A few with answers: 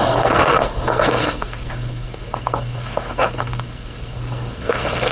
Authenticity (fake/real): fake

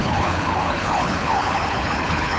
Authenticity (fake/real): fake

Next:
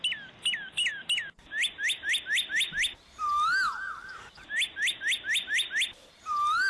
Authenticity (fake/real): real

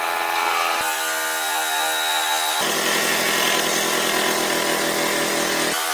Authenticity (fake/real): real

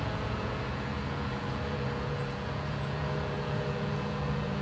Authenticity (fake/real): fake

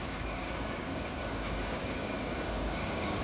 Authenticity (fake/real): fake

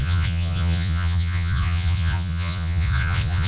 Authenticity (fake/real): fake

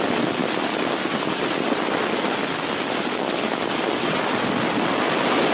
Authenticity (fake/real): real